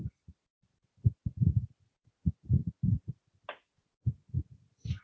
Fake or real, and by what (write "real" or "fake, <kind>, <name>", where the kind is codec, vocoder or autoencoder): real